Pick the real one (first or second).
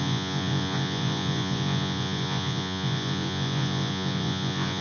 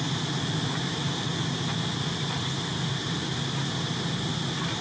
second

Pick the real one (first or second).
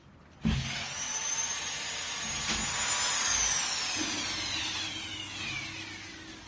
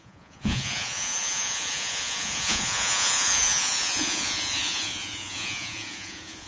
first